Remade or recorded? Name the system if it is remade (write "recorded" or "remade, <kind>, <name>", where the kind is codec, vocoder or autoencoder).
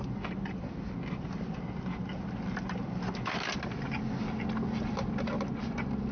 recorded